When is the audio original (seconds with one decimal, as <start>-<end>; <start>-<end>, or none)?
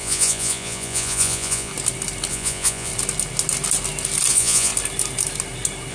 1.7-2.3; 2.9-4.3; 4.7-5.9